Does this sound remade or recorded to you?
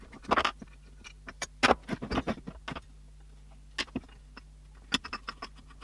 recorded